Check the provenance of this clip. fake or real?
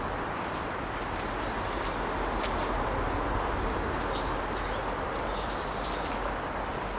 real